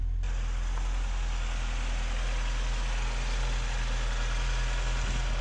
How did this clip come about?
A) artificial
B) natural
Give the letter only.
B